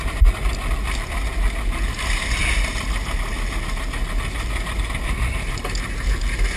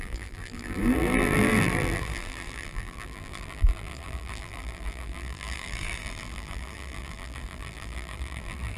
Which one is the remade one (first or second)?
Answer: second